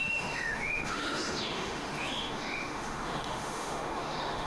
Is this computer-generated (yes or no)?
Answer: yes